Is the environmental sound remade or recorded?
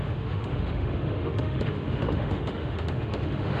remade